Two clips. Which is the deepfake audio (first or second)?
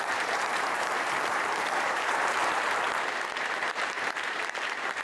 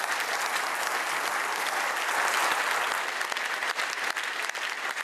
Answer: first